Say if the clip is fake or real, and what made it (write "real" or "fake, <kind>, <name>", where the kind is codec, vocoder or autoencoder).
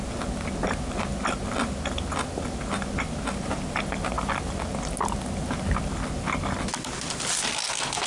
real